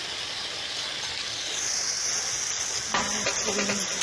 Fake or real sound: real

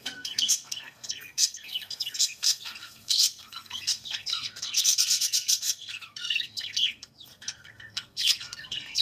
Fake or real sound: fake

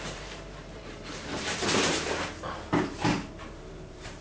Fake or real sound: fake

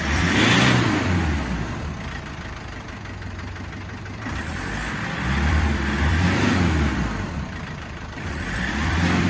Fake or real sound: fake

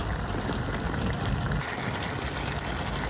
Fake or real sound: real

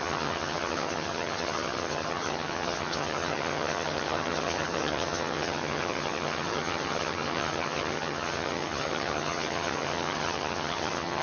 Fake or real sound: fake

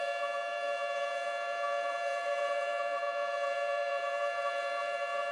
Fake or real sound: fake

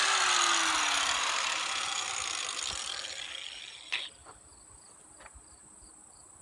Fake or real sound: real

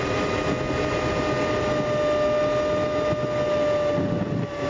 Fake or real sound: real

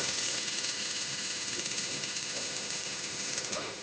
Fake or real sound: fake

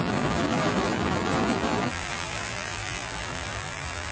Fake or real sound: fake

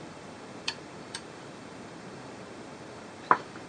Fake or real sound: fake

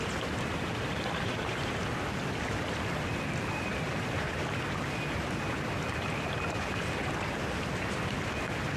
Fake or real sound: real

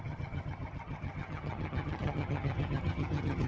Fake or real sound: fake